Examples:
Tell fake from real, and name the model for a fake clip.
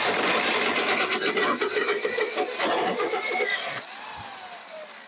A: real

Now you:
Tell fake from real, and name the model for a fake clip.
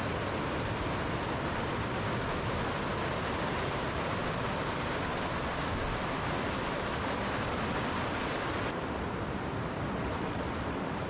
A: real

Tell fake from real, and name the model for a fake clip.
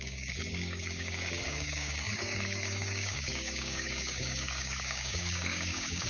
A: fake, codec, DAC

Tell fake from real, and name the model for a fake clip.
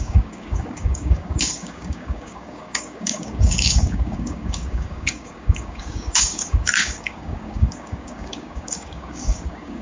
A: fake, codec, DAC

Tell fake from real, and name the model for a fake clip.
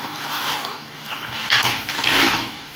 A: fake, codec, DAC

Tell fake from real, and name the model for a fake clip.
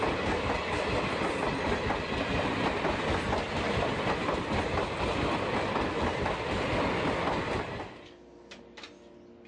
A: real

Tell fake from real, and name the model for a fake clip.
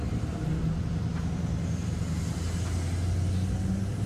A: real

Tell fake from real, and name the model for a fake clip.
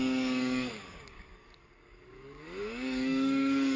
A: fake, codec, DAC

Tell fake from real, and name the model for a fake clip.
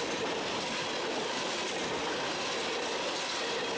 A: real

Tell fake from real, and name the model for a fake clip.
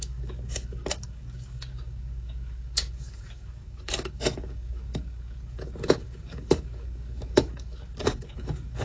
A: fake, codec, DAC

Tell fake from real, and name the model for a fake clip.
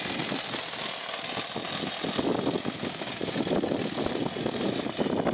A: real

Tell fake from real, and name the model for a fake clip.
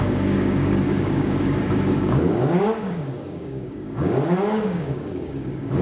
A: fake, codec, DAC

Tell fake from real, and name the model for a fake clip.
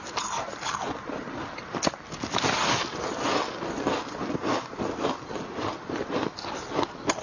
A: real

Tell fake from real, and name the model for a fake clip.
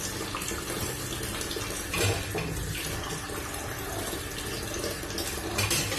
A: real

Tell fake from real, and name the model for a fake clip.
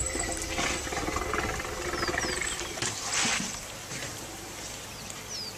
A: real